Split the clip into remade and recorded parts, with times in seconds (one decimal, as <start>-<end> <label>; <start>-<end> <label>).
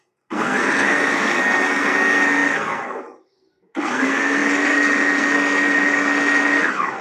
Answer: 0.0-7.0 remade